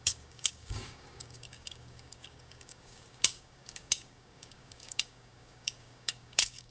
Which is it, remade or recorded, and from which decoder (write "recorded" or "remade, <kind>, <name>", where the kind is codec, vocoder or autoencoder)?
remade, codec, DAC